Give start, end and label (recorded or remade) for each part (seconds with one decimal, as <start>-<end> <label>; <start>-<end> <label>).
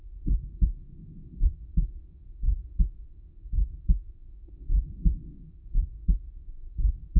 0.0-7.2 remade